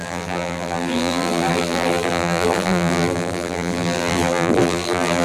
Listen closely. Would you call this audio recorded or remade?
remade